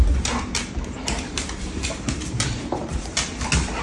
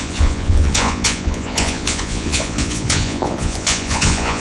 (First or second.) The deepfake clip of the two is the second